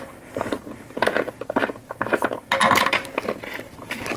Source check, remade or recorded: recorded